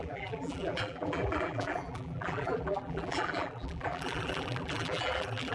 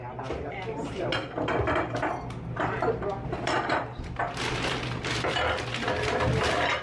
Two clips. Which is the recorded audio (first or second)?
second